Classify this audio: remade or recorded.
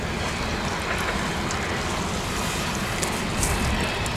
recorded